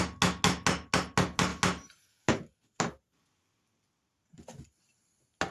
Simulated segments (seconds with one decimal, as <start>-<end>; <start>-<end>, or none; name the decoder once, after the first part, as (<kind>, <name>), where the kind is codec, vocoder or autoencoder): none